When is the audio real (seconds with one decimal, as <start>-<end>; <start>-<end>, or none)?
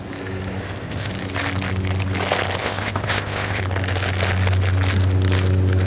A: 0.0-0.6; 1.1-2.6; 3.6-5.9